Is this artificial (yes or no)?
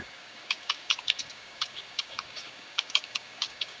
yes